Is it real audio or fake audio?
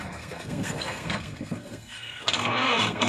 fake